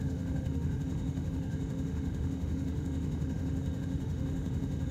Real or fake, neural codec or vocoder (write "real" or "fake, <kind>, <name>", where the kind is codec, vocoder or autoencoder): fake, autoencoder, DAC-VAE